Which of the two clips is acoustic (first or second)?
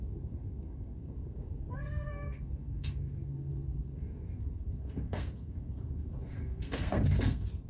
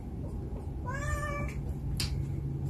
second